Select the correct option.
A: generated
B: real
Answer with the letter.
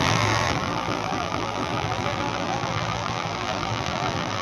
A